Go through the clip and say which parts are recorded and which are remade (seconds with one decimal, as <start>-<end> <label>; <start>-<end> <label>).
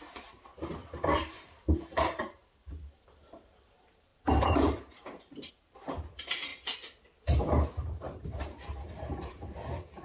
0.0-6.5 remade; 6.5-7.2 recorded; 7.2-10.0 remade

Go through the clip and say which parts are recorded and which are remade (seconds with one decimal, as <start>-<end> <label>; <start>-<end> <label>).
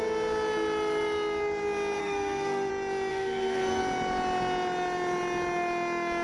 0.0-2.0 recorded; 2.0-2.7 remade; 2.7-3.1 recorded; 3.1-3.8 remade; 3.8-6.2 recorded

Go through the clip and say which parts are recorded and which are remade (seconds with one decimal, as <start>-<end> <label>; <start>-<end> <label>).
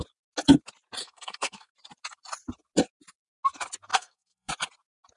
0.0-1.0 recorded; 1.0-1.7 remade; 1.7-3.9 recorded; 3.9-4.5 remade; 4.5-5.2 recorded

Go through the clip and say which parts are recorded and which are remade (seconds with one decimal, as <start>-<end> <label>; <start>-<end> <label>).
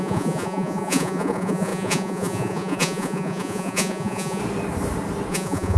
0.0-4.4 remade; 4.4-5.3 recorded; 5.3-5.8 remade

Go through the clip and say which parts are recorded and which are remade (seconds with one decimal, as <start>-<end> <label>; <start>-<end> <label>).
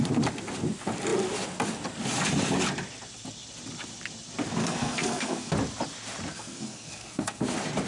0.0-4.6 recorded; 4.6-5.5 remade; 5.5-6.3 recorded; 6.3-7.5 remade; 7.5-7.9 recorded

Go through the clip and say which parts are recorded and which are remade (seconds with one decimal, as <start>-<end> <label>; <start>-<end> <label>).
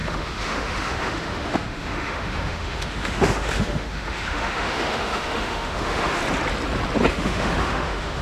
0.0-6.2 remade; 6.2-7.1 recorded; 7.1-8.2 remade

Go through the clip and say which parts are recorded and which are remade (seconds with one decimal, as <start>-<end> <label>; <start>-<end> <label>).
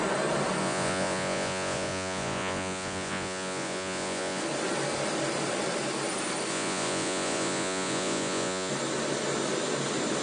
0.0-0.6 recorded; 0.6-4.4 remade; 4.4-6.5 recorded; 6.5-8.7 remade; 8.7-10.2 recorded